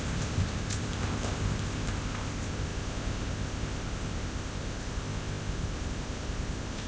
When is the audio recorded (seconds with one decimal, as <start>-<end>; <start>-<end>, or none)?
none